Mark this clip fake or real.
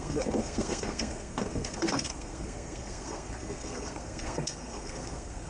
fake